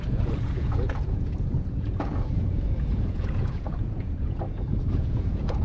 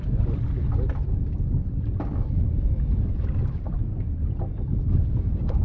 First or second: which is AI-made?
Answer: first